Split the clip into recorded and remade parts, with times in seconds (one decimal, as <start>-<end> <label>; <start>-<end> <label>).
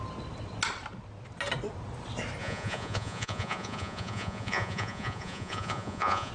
0.0-2.4 recorded; 2.4-6.3 remade